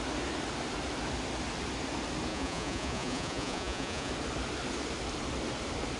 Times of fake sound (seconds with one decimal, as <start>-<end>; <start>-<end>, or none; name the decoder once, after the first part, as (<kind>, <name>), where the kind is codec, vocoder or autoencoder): 2.3-4.1 (vocoder, Vocos)